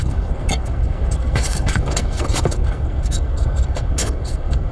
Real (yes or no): no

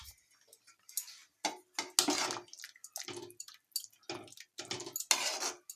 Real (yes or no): yes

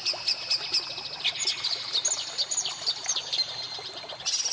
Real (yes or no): yes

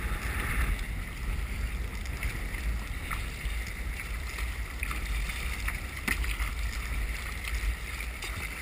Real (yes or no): yes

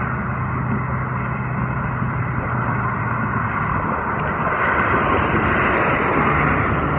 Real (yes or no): yes